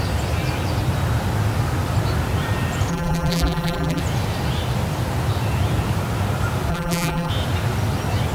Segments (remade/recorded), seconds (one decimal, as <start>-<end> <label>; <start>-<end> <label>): 0.0-2.9 recorded; 2.9-4.0 remade; 4.0-6.7 recorded; 6.7-7.3 remade; 7.3-8.3 recorded